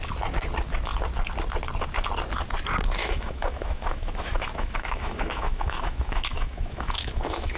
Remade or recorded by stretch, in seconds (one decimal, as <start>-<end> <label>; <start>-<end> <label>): 0.0-3.0 recorded; 3.0-7.6 remade